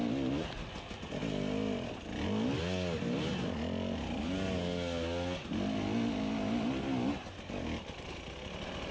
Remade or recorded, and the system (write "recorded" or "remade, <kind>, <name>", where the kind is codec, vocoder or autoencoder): recorded